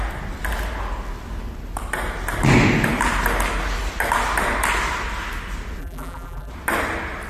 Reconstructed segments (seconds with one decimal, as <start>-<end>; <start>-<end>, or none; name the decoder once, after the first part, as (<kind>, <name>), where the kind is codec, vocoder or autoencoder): 5.8-6.5 (vocoder, BigVGAN v2)